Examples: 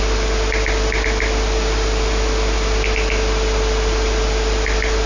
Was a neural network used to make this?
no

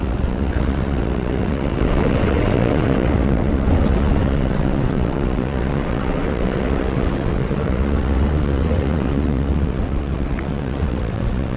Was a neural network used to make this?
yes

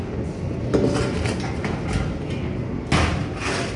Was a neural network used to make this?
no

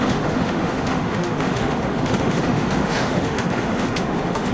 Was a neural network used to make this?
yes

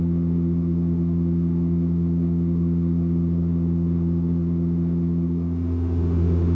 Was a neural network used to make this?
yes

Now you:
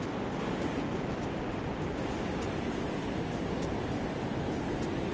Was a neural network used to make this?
no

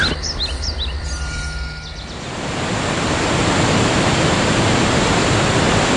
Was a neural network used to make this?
no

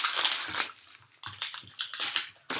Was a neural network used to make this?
no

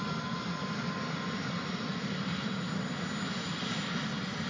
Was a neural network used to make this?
no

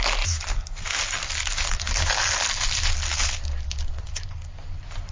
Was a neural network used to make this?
no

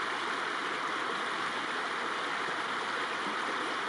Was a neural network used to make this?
no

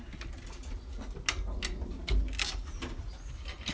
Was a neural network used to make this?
no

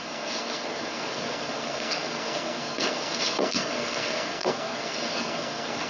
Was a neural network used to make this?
yes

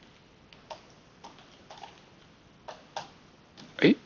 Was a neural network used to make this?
no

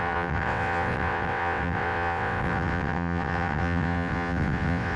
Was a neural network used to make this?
yes